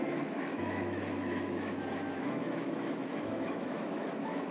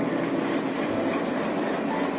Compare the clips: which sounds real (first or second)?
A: second